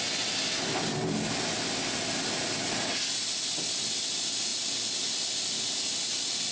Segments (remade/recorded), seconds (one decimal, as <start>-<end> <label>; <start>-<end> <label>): 0.0-6.5 recorded